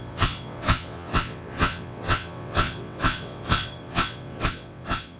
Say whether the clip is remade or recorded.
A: remade